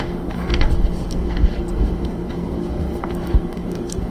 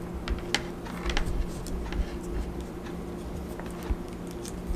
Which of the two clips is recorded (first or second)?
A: second